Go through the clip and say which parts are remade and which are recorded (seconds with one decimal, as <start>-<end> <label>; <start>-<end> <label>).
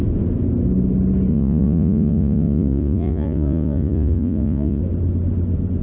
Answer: 0.0-1.3 recorded; 1.3-4.8 remade; 4.8-5.8 recorded